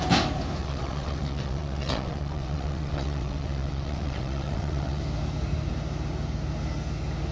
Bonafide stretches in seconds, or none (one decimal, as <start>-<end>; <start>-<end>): 0.0-0.6; 5.0-7.3